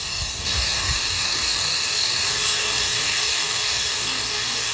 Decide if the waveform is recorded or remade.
remade